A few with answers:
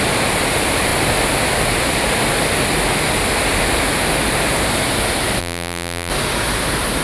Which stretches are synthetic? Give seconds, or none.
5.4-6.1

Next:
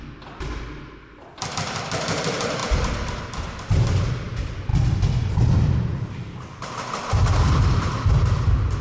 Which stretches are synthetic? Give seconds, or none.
none

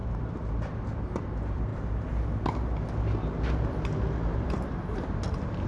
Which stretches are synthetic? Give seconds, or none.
0.0-1.7; 5.1-5.7

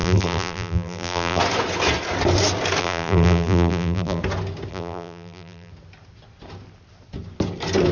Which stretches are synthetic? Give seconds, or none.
0.0-1.4; 2.8-4.2; 4.7-5.7

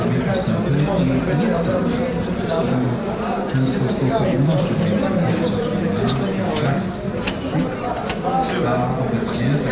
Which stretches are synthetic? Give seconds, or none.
0.7-5.7

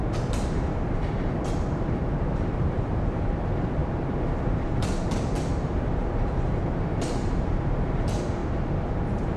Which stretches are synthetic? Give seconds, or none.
0.0-8.4; 9.0-9.4

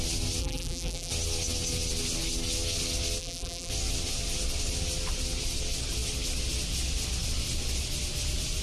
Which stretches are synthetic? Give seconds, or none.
0.4-1.1; 3.2-3.7